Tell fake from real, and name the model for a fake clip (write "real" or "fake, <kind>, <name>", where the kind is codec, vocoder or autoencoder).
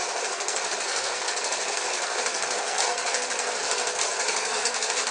fake, codec, SNAC